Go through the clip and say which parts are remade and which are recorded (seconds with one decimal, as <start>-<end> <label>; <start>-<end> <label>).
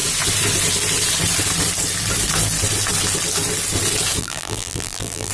0.0-4.2 recorded; 4.2-5.3 remade